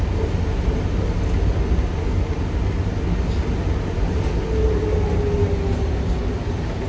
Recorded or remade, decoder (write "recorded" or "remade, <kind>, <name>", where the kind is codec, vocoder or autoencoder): recorded